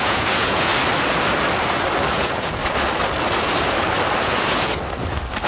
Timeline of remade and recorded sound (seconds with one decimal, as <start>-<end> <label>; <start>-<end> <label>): 0.0-0.7 remade; 0.7-2.1 recorded; 2.1-2.6 remade; 2.6-4.2 recorded; 4.2-4.7 remade; 4.7-5.5 recorded